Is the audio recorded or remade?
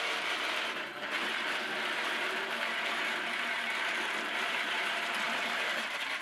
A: remade